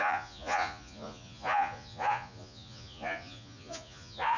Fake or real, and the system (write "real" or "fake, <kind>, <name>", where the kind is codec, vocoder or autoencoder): fake, vocoder, Vocos